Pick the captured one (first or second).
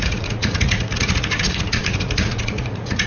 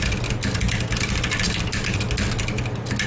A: second